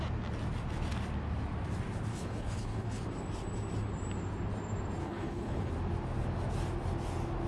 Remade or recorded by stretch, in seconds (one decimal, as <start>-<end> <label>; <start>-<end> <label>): 0.0-2.1 recorded; 2.1-3.0 remade; 3.0-5.0 recorded; 5.0-5.7 remade; 5.7-7.5 recorded